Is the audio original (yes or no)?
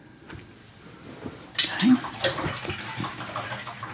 yes